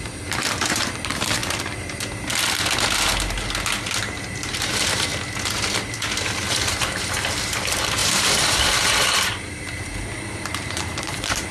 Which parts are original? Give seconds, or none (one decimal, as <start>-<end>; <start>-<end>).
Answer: 1.4-4.2; 5.1-6.5